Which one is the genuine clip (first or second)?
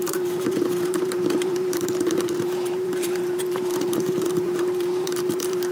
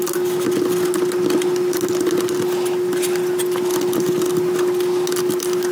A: second